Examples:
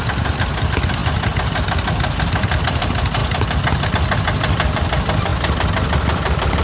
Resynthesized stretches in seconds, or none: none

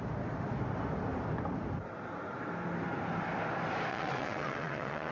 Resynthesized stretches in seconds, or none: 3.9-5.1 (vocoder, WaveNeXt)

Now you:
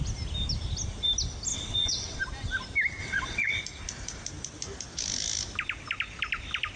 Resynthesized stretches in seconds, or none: 1.5-2.2 (vocoder, WaveNeXt); 3.0-3.6